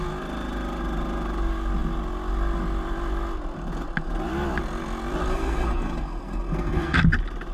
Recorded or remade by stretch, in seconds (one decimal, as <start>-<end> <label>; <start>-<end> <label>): 0.0-5.3 recorded; 5.3-7.0 remade; 7.0-7.5 recorded